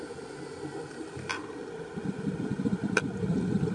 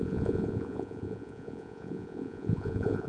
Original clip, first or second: first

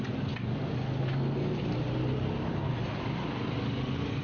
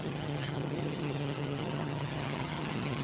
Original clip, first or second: first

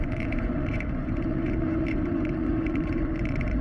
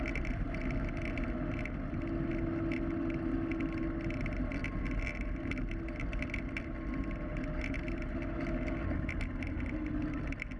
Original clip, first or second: second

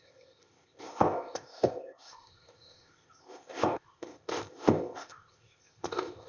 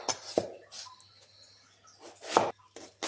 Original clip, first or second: second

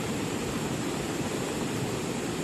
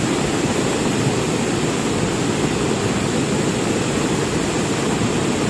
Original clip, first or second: second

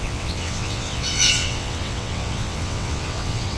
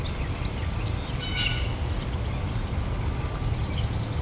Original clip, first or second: second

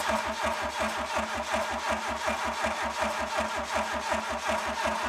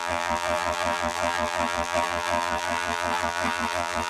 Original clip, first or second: first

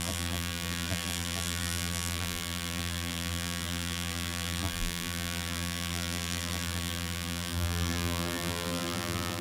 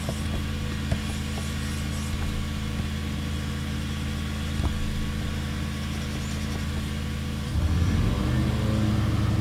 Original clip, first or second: second